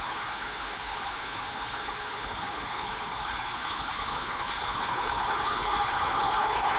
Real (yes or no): no